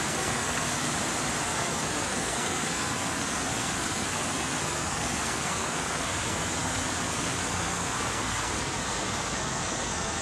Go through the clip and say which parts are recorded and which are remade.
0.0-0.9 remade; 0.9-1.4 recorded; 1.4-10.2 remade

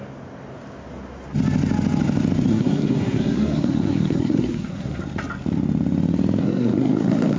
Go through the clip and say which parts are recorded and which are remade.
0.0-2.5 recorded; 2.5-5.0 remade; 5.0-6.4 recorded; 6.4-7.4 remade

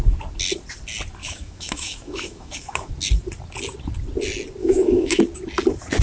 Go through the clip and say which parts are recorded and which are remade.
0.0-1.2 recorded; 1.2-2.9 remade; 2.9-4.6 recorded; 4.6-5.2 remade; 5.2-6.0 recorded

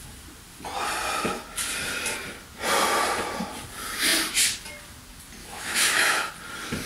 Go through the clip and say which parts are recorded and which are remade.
0.0-5.4 recorded; 5.4-6.3 remade; 6.3-6.9 recorded

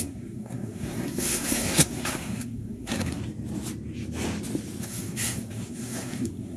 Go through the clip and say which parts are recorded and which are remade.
0.0-3.2 remade; 3.2-4.8 recorded; 4.8-6.6 remade

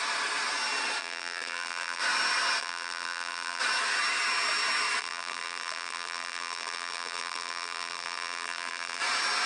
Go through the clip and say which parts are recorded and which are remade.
0.0-1.0 recorded; 1.0-2.0 remade; 2.0-2.6 recorded; 2.6-3.6 remade; 3.6-5.0 recorded; 5.0-9.0 remade; 9.0-9.5 recorded

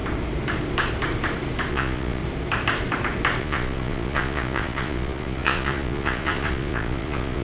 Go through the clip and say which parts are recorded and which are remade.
0.0-1.7 recorded; 1.7-2.2 remade; 2.2-3.4 recorded; 3.4-7.4 remade